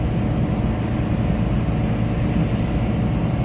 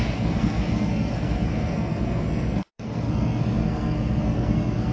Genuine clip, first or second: first